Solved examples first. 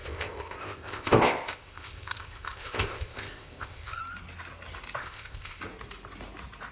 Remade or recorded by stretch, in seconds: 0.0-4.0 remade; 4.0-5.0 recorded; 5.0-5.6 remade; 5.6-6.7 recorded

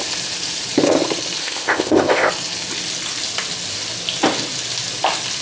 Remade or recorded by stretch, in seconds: 0.0-1.4 recorded; 1.4-2.3 remade; 2.3-5.4 recorded